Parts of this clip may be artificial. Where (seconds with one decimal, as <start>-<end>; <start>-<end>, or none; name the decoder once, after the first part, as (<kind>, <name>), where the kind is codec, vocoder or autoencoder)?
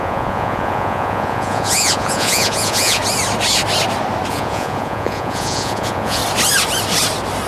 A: 0.0-3.0 (vocoder, Vocos); 4.3-6.2